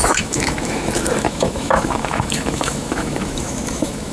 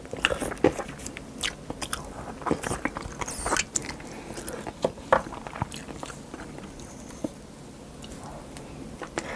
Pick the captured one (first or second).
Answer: second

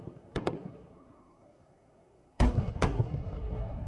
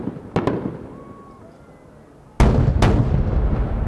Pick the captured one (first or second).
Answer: second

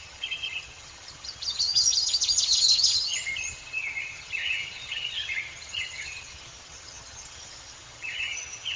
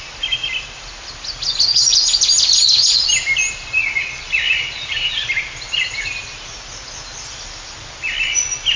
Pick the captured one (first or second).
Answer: second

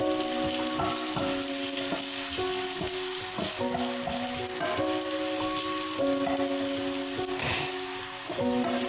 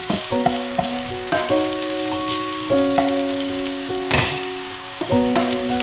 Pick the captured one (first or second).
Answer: first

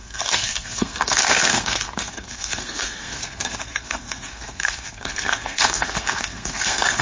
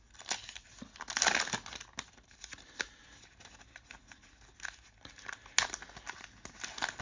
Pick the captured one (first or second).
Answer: second